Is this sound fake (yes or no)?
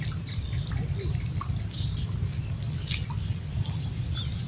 no